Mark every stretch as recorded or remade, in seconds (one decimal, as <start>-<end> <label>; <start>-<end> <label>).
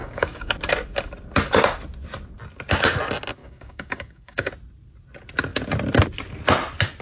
0.0-0.5 remade; 0.5-3.4 recorded; 3.4-4.5 remade; 4.5-7.0 recorded